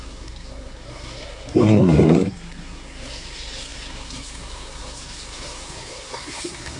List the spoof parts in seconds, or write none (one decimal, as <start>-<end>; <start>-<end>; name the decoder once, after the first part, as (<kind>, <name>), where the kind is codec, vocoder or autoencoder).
0.0-6.8 (codec, SNAC)